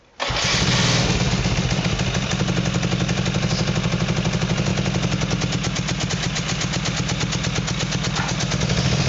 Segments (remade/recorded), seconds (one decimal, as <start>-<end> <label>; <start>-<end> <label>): 0.0-9.1 recorded